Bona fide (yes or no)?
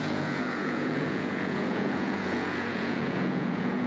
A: no